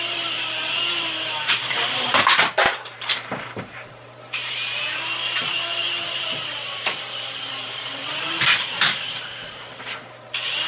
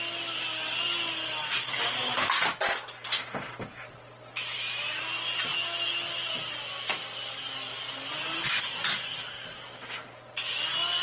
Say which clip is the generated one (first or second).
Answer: first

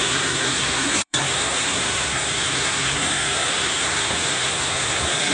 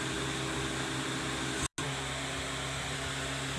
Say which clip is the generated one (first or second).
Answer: first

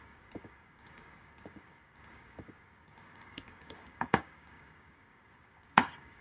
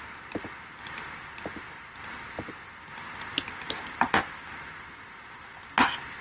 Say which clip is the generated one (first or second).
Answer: first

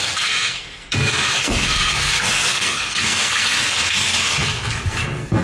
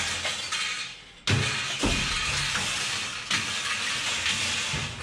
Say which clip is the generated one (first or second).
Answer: first